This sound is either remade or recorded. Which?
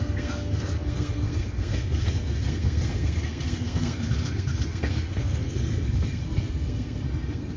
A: remade